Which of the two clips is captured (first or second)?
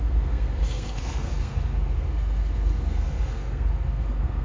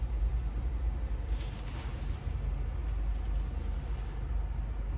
second